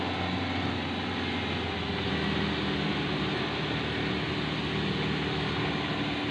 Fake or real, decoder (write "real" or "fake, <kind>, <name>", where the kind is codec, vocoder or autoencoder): real